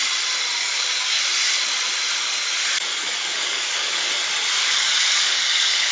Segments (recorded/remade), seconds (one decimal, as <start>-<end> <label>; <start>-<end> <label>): 0.0-0.6 recorded; 0.6-1.2 remade; 1.2-2.9 recorded; 2.9-4.1 remade; 4.1-4.6 recorded; 4.6-5.9 remade

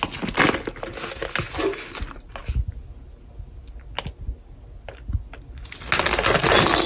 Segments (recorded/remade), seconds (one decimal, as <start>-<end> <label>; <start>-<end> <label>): 0.0-6.9 recorded

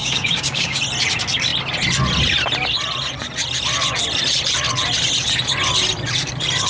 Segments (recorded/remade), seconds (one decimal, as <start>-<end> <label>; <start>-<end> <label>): 0.0-0.8 remade; 0.8-6.7 recorded

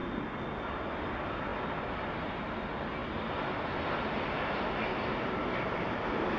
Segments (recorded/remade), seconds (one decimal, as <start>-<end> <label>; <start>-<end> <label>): 0.0-6.4 recorded

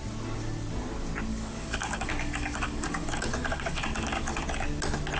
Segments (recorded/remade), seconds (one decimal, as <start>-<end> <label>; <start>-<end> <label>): 0.0-1.3 recorded; 1.3-4.4 remade; 4.4-5.2 recorded

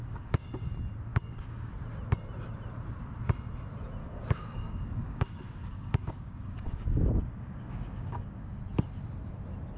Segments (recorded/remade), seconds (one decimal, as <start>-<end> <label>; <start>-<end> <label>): 0.0-0.7 remade; 0.7-1.1 recorded; 1.1-1.7 remade; 1.7-4.0 recorded; 4.0-8.6 remade; 8.6-9.8 recorded

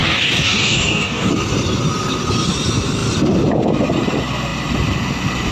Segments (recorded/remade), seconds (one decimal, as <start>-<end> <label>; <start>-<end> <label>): 0.0-1.3 remade; 1.3-5.5 recorded

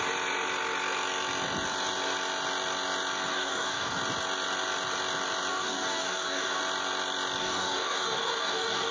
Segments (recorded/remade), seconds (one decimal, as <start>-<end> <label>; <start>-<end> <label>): 0.0-3.3 recorded; 3.3-4.0 remade; 4.0-5.5 recorded; 5.5-6.6 remade; 6.6-7.4 recorded; 7.4-8.9 remade